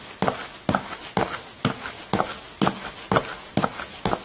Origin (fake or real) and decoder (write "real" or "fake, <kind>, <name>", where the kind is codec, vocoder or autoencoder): real